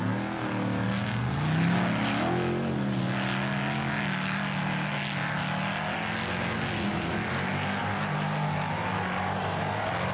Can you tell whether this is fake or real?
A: real